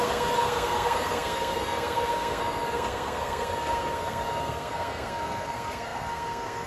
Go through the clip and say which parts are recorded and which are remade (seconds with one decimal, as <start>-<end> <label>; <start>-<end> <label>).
0.0-6.7 remade